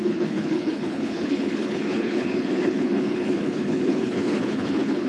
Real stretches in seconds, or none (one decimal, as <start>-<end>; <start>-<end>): none